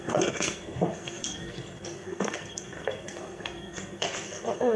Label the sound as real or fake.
fake